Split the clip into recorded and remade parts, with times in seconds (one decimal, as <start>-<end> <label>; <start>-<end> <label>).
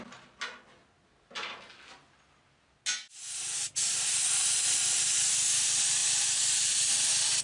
0.0-7.4 recorded